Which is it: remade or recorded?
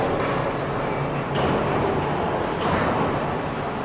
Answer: recorded